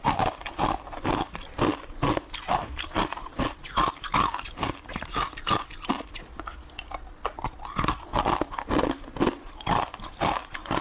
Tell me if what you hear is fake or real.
real